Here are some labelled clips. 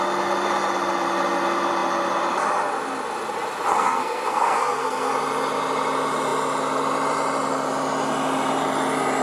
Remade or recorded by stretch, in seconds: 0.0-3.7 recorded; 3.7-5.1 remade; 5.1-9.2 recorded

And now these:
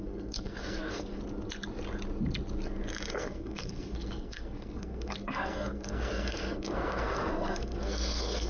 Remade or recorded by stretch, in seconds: 0.0-1.2 remade; 1.2-3.1 recorded; 3.1-8.5 remade

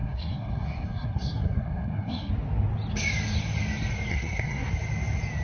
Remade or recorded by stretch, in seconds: 0.0-2.3 remade; 2.3-4.1 recorded; 4.1-4.7 remade; 4.7-5.4 recorded

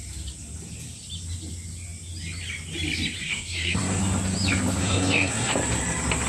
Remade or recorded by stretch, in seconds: 0.0-3.2 recorded; 3.2-4.0 remade; 4.0-4.8 recorded; 4.8-5.5 remade; 5.5-6.3 recorded

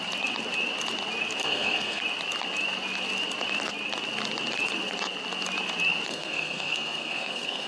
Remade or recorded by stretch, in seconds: 0.0-1.4 recorded; 1.4-2.0 remade; 2.0-6.1 recorded; 6.1-7.7 remade

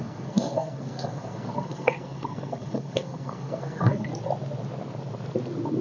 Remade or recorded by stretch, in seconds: 0.0-4.1 remade; 4.1-5.8 recorded

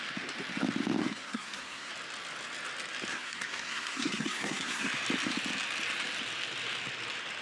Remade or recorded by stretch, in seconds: 0.0-1.0 recorded; 1.0-1.9 remade; 1.9-3.1 recorded; 3.1-4.9 remade; 4.9-7.4 recorded